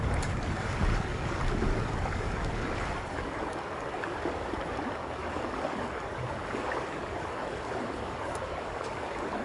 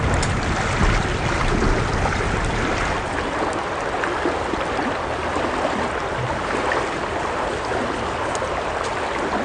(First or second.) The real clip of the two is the second